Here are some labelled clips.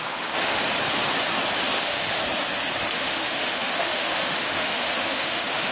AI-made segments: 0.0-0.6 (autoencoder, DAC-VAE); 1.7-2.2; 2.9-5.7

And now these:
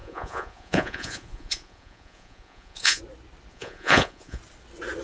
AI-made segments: 0.0-3.0 (vocoder, Vocos); 3.5-4.4

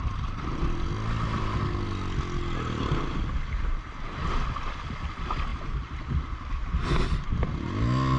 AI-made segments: none

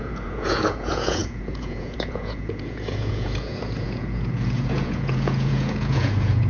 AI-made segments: 0.0-6.5 (vocoder, Vocos)